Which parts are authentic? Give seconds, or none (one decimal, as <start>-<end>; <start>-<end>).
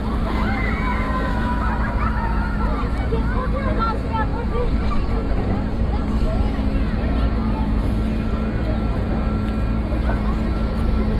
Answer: 0.0-4.3; 6.0-11.2